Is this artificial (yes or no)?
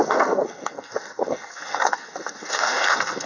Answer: yes